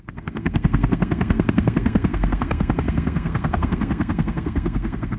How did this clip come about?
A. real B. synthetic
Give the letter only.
B